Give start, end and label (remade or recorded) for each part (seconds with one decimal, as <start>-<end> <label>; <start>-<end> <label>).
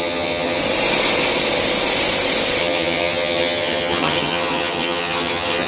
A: 0.0-0.6 remade; 0.6-2.6 recorded; 2.6-5.7 remade